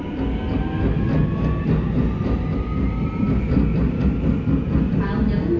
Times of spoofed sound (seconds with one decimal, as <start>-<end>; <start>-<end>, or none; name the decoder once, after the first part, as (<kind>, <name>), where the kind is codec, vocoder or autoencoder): none